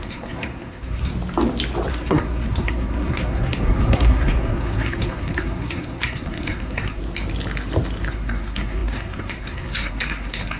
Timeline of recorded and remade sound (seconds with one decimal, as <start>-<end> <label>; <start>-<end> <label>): 0.0-1.1 remade; 1.1-1.9 recorded; 1.9-7.0 remade; 7.0-8.1 recorded; 8.1-10.6 remade